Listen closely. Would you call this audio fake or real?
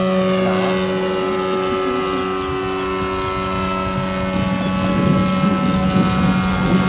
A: real